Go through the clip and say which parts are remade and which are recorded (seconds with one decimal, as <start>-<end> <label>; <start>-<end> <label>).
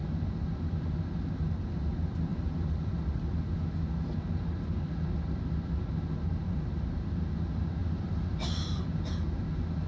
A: 0.0-7.8 recorded; 7.8-8.8 remade; 8.8-9.9 recorded